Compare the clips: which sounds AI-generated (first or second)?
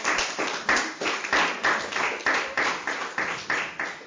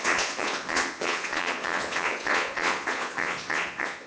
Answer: second